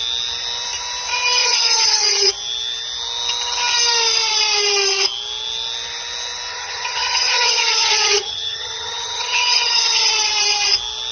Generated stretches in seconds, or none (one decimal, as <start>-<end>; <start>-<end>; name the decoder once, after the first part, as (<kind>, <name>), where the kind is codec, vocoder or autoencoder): 1.4-2.3 (vocoder, HiFi-GAN); 6.5-10.1